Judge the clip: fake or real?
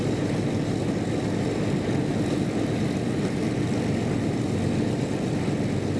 real